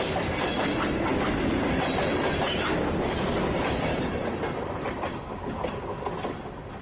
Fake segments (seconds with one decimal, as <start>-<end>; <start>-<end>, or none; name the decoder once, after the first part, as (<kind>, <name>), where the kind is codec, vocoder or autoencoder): none